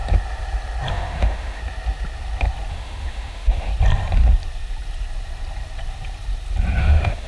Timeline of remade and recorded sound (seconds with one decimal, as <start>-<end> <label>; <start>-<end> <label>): 0.0-0.9 recorded; 0.9-1.6 remade; 1.6-2.7 recorded; 2.7-3.7 remade; 3.7-6.8 recorded; 6.8-7.3 remade